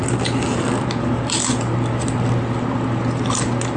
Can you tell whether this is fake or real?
real